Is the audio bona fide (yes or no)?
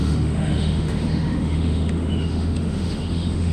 no